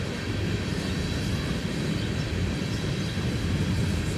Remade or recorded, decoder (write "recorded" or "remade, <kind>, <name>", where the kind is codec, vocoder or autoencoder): recorded